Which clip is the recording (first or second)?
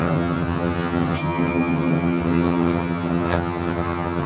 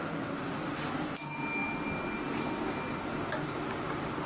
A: second